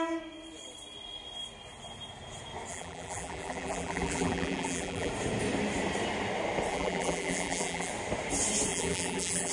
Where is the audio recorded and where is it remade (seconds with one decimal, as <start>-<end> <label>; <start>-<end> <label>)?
0.0-2.7 recorded; 2.7-5.1 remade; 5.1-6.7 recorded; 6.7-7.9 remade; 7.9-8.7 recorded; 8.7-9.5 remade